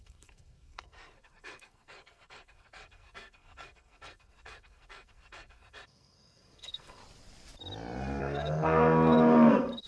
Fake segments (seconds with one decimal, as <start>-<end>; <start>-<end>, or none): 0.0-7.0; 8.2-9.9